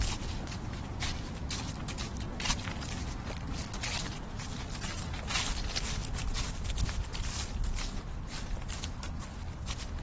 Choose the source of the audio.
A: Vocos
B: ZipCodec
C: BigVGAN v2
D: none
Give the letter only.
D